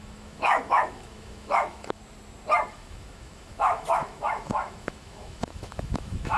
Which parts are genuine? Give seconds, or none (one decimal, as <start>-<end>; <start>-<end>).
2.0-2.7